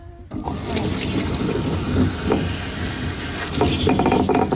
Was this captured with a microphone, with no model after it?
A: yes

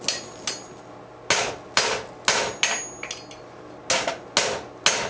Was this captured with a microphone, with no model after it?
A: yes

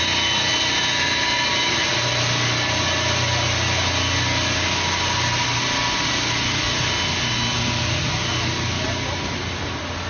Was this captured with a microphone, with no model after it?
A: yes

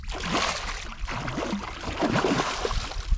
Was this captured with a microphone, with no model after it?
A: yes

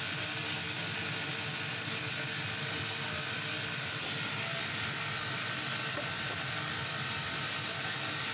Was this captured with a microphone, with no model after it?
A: yes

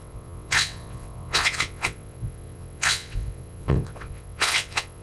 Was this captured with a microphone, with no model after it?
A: no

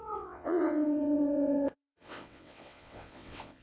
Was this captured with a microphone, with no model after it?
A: no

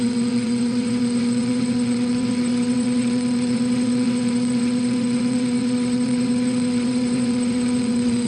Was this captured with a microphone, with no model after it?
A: no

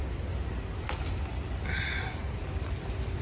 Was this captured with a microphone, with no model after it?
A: yes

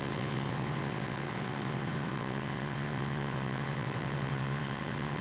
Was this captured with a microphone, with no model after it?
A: no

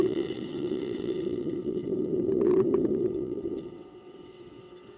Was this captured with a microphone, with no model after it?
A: no